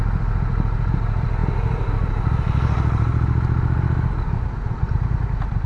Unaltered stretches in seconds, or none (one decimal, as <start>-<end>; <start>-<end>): 0.0-5.7